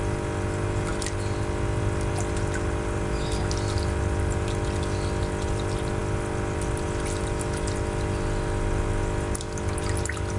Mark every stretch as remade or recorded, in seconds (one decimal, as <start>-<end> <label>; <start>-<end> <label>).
0.0-10.4 recorded